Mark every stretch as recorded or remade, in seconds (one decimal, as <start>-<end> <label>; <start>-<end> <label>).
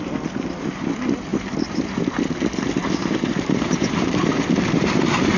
0.0-1.3 recorded; 1.3-2.1 remade; 2.1-2.8 recorded; 2.8-4.2 remade; 4.2-5.4 recorded